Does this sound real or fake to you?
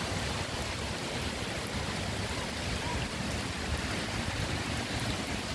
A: real